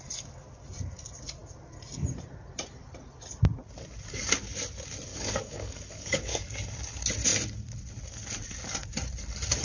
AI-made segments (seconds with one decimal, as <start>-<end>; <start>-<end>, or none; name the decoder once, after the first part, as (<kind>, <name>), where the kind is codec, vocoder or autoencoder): 5.1-6.4 (codec, DAC)